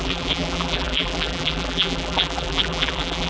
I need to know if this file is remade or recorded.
remade